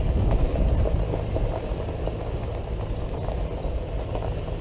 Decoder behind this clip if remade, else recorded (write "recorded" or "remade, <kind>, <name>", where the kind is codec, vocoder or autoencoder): recorded